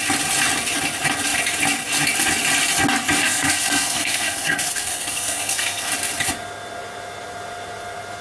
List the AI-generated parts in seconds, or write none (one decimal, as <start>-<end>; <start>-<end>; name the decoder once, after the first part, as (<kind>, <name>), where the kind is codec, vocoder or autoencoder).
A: 3.2-5.9 (codec, SNAC)